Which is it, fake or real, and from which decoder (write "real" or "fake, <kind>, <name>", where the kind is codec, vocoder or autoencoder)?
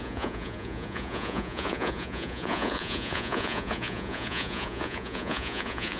fake, vocoder, Vocos